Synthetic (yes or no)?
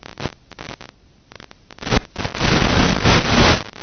no